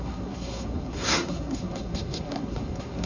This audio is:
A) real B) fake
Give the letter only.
B